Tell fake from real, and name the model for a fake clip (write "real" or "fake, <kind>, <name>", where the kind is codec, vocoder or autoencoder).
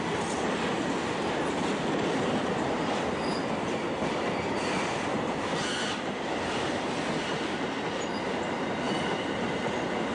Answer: real